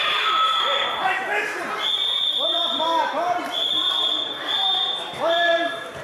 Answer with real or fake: fake